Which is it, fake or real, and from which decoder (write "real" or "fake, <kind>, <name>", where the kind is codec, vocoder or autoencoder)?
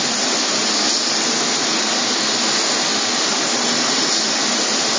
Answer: real